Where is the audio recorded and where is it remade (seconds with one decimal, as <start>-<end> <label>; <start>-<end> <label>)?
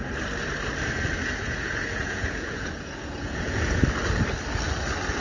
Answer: 0.0-1.4 recorded; 1.4-3.8 remade; 3.8-5.2 recorded